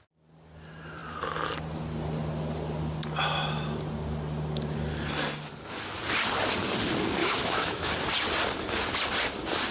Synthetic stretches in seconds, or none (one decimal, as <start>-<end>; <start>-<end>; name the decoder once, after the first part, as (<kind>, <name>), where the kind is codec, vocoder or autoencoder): 7.2-7.9 (autoencoder, DAC-VAE)